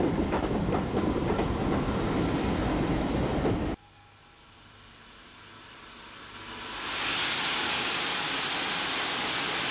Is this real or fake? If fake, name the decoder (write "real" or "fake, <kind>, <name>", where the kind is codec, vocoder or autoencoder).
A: real